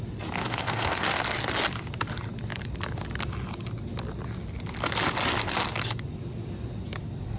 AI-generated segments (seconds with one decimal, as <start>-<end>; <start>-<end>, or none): 0.4-1.2